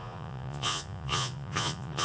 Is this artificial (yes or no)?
yes